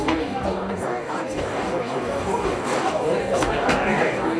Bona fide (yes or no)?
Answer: no